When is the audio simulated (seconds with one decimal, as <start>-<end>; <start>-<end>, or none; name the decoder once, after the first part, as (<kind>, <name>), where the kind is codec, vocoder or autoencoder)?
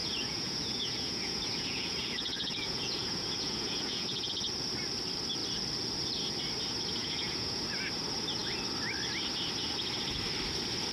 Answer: 0.0-4.3 (vocoder, Vocos); 7.0-7.6